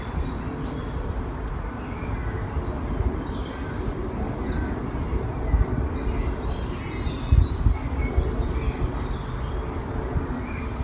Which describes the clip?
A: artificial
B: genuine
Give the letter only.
B